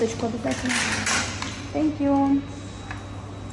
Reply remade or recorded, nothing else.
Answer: recorded